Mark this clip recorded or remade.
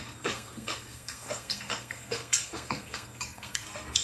remade